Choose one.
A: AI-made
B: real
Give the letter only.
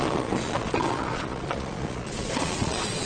A